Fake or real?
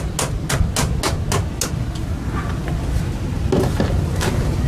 real